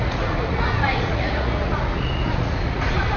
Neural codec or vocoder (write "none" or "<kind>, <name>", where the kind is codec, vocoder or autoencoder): vocoder, Vocos